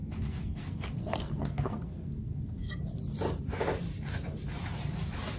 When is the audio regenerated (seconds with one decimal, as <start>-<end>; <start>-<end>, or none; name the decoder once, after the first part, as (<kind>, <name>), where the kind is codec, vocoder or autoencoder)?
0.0-2.8 (codec, SNAC)